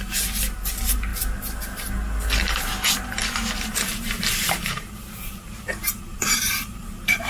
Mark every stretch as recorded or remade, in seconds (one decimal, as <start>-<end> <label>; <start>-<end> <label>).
0.0-1.1 remade; 1.1-2.6 recorded; 2.6-7.3 remade